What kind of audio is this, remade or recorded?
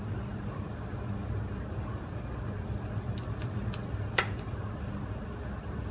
recorded